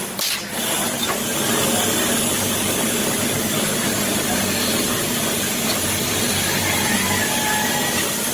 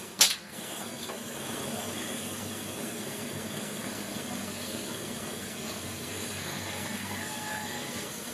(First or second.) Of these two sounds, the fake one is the second